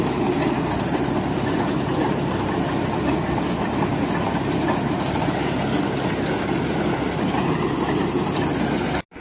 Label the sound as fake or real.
real